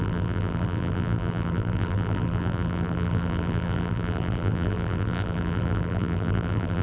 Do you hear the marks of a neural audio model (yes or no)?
yes